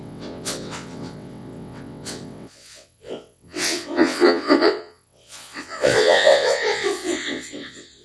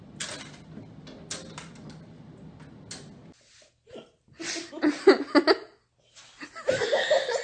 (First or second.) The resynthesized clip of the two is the first